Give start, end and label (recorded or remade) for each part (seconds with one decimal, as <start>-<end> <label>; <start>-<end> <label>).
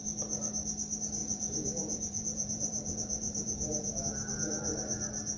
0.0-1.2 recorded; 1.2-4.0 remade; 4.0-5.4 recorded